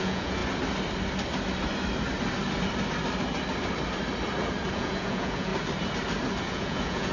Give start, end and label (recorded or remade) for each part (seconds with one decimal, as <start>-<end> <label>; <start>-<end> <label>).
0.0-0.4 remade; 0.4-4.7 recorded; 4.7-5.5 remade; 5.5-6.4 recorded; 6.4-7.1 remade